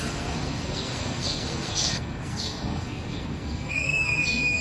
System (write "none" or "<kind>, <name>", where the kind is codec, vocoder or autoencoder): codec, SNAC